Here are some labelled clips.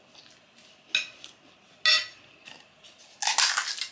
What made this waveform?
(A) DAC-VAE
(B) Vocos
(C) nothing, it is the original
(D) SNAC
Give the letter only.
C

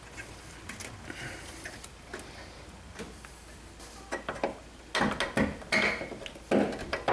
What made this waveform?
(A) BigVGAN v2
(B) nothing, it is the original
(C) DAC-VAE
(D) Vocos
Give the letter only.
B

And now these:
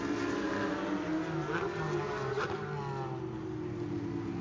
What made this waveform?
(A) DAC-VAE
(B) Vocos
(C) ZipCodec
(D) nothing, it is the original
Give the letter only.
D